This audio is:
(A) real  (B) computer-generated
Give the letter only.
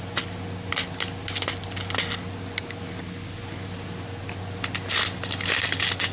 A